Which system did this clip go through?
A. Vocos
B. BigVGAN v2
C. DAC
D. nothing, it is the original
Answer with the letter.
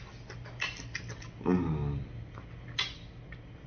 D